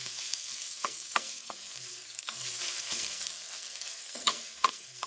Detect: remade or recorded remade